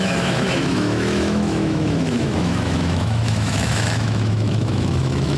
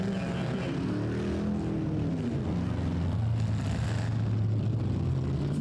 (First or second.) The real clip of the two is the second